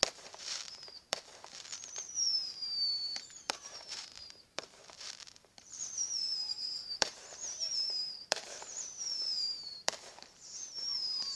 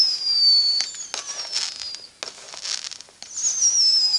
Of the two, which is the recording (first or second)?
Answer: second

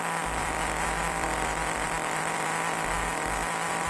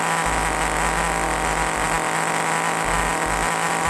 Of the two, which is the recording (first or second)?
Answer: second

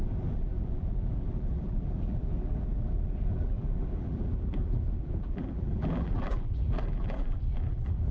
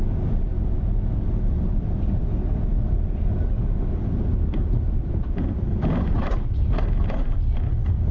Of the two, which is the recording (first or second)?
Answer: second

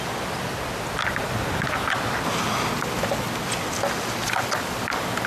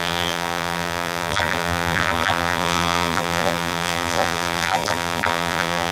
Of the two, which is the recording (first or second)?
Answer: first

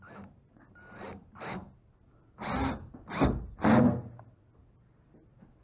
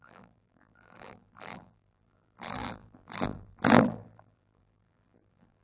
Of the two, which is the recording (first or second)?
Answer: first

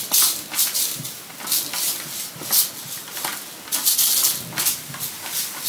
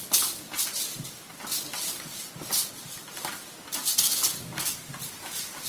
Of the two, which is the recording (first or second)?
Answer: first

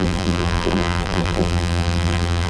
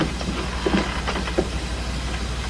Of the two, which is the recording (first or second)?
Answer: second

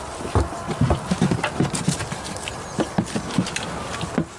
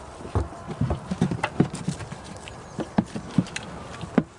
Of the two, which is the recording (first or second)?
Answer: first